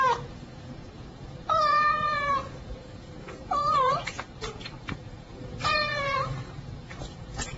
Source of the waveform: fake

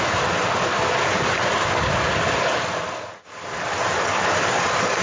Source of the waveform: real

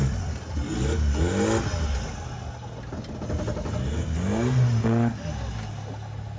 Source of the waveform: real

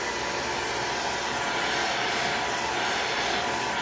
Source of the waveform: real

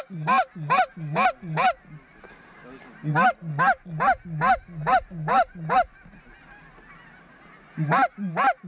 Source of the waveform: real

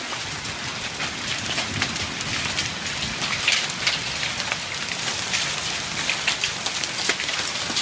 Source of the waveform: real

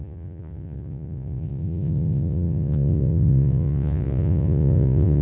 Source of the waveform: fake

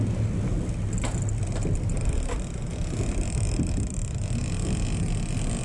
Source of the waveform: real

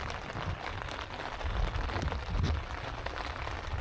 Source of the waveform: real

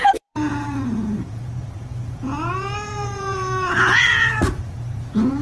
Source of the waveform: fake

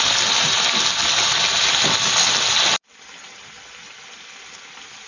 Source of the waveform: real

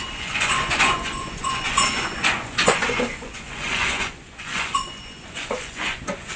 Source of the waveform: fake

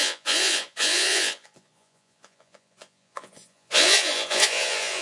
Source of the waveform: fake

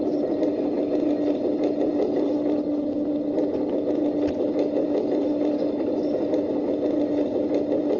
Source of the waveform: real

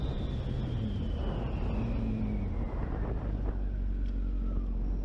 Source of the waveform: real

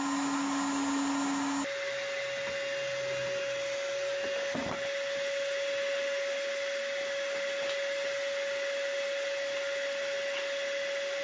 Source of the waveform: real